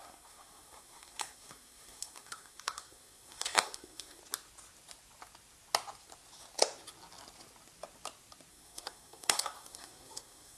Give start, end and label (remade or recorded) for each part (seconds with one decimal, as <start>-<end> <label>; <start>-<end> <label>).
0.0-4.2 remade; 4.2-8.5 recorded; 8.5-10.6 remade